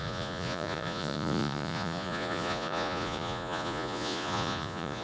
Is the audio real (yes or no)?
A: no